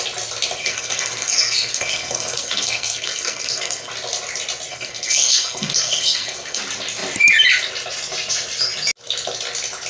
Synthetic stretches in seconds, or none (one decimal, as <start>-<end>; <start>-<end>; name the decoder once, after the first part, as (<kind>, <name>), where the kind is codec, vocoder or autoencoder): 0.6-3.9 (codec, SNAC); 4.7-6.6